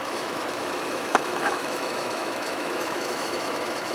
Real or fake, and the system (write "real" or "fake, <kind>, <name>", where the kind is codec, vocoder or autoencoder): fake, autoencoder, DAC-VAE